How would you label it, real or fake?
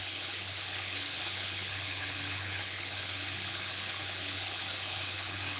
fake